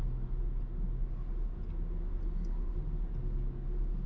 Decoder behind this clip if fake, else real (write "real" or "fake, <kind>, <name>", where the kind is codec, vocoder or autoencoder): real